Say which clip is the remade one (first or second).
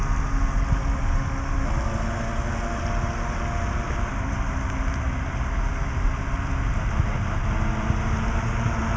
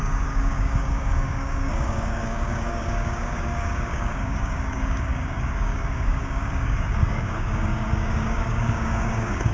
second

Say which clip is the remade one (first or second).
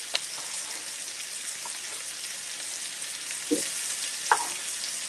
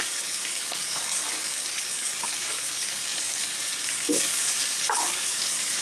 second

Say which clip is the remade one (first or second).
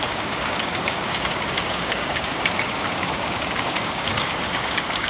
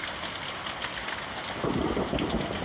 first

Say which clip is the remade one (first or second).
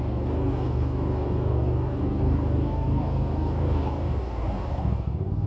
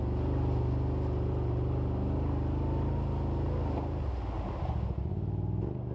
first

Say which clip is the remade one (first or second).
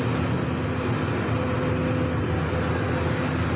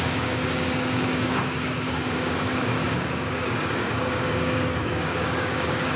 second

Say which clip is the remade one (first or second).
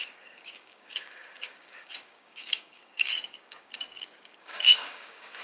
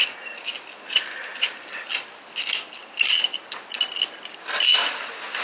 first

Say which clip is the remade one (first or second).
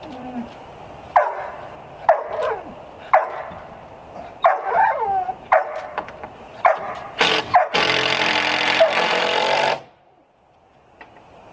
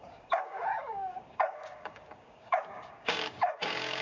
second